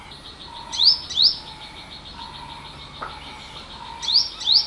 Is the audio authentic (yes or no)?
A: yes